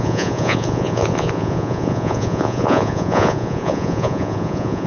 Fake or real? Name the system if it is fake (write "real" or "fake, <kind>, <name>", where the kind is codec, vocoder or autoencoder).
fake, vocoder, Vocos